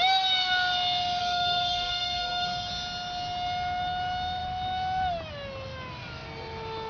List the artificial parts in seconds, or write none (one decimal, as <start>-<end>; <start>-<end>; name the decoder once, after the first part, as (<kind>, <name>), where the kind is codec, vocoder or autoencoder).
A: 1.2-2.7 (codec, SNAC)

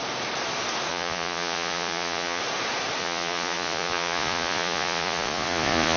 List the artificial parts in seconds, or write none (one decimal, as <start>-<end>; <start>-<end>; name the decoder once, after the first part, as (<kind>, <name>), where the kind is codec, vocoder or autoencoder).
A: 0.9-2.4 (vocoder, Vocos); 3.0-6.0

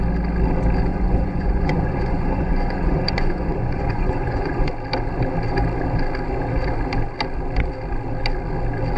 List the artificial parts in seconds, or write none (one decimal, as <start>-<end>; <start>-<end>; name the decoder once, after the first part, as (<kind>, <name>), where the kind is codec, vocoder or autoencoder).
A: 0.9-4.7 (vocoder, Vocos)